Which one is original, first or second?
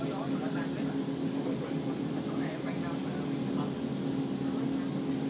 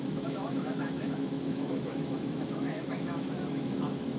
first